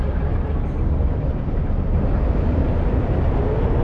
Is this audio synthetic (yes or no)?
no